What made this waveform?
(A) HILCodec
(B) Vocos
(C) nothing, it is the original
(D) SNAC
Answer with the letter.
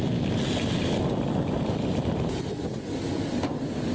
C